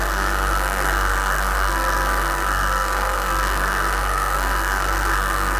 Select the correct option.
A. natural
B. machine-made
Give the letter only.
B